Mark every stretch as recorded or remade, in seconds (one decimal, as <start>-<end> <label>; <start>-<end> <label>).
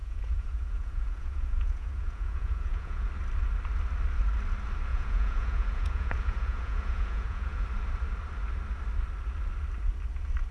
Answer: 0.0-3.1 remade; 3.1-4.9 recorded; 4.9-7.6 remade; 7.6-10.5 recorded